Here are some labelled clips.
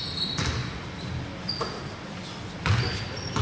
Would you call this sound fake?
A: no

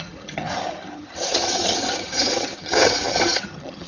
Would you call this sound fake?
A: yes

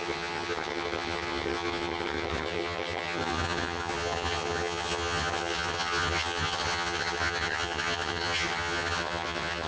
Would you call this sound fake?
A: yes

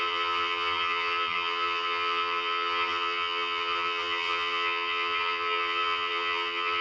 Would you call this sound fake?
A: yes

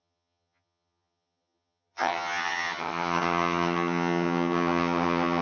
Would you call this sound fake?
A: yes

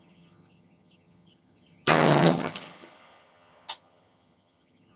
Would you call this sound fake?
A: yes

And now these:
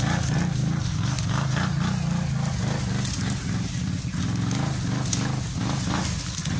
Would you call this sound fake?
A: no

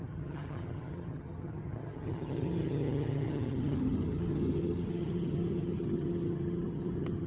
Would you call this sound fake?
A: yes